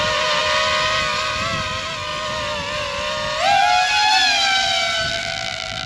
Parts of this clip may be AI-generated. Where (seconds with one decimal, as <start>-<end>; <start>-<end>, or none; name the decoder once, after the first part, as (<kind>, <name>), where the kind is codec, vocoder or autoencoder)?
5.1-5.9 (vocoder, BigVGAN v2)